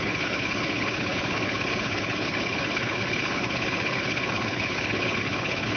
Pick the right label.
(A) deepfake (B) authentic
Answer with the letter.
A